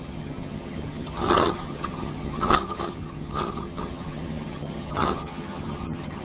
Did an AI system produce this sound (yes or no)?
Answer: yes